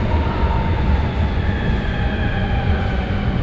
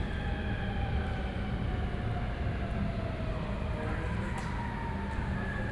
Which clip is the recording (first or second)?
second